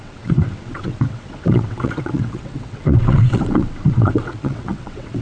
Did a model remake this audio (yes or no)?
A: yes